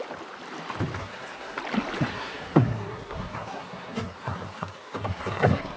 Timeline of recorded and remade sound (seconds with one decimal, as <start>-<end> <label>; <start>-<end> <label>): 0.0-1.0 recorded; 1.0-1.6 remade; 1.6-2.1 recorded; 2.1-5.8 remade